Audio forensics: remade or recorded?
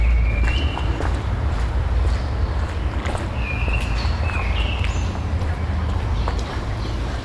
recorded